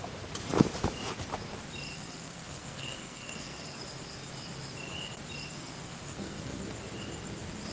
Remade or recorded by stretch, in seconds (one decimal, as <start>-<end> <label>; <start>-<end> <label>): 0.0-1.9 recorded; 1.9-3.8 remade; 3.8-5.5 recorded; 5.5-6.6 remade; 6.6-7.7 recorded